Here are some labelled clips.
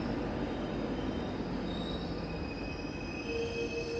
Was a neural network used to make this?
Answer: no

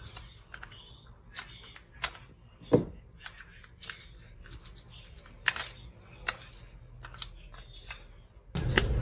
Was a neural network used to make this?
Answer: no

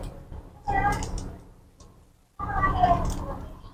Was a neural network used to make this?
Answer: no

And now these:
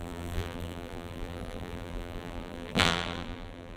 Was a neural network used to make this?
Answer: yes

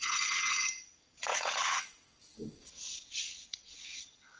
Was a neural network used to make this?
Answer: yes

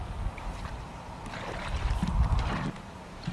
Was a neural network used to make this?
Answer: no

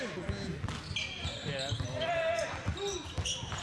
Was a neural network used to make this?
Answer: no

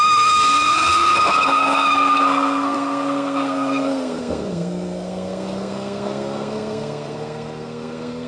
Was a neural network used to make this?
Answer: yes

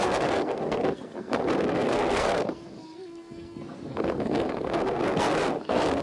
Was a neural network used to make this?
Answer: yes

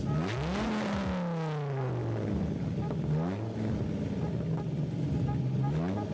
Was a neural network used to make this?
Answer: no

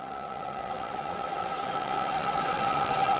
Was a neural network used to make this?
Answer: yes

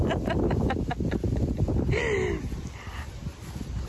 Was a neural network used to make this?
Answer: no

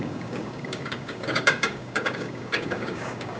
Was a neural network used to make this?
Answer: yes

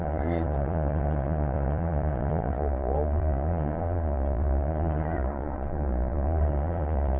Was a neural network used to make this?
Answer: yes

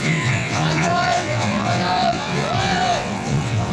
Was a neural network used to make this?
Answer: yes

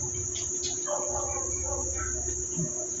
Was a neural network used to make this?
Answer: no